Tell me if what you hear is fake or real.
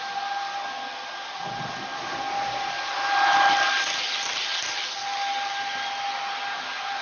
fake